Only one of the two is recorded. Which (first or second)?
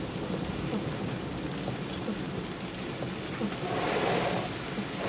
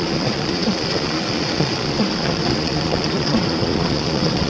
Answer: first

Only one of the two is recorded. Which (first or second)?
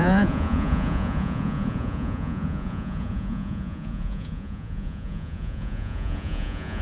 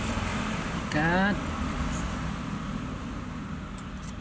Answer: second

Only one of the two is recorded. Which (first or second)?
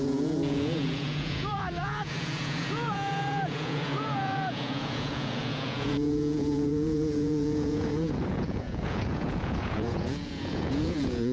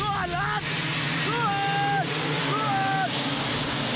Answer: second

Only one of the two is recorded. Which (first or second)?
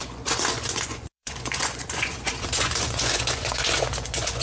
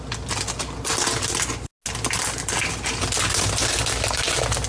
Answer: second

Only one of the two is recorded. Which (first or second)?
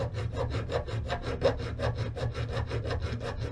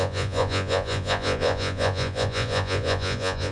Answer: first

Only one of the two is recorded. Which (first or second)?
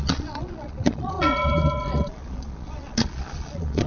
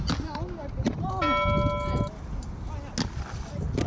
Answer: second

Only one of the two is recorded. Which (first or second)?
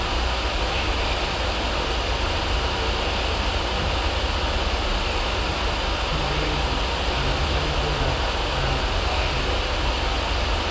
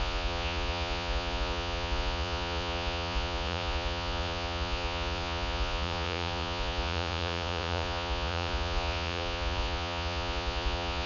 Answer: first